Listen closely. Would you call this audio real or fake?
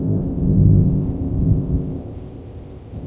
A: fake